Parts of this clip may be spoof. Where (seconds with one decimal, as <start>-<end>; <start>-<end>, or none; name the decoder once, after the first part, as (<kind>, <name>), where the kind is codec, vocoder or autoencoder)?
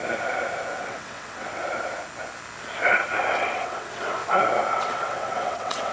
0.8-1.6 (vocoder, WaveNeXt); 3.3-4.2; 4.7-5.9